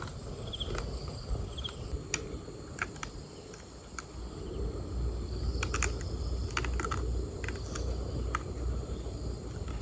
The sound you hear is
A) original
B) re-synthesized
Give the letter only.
A